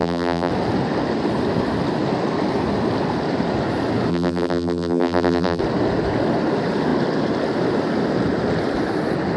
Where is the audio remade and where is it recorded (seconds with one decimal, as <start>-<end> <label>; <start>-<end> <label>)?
0.0-0.5 remade; 0.5-4.1 recorded; 4.1-5.6 remade; 5.6-9.4 recorded